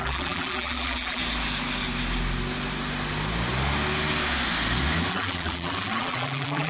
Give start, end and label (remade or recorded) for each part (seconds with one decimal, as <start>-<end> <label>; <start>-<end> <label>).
0.0-1.2 remade; 1.2-5.1 recorded; 5.1-6.7 remade